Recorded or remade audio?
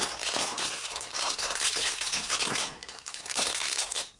remade